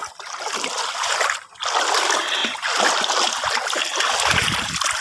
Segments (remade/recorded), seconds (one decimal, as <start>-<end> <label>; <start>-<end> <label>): 0.0-5.0 recorded